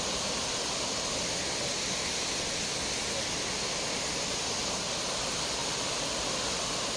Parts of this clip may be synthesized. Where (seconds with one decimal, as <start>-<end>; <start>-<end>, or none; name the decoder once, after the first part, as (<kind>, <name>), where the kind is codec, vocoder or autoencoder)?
none